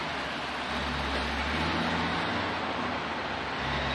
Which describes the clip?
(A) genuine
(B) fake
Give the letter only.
A